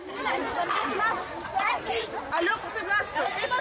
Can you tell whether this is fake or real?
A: real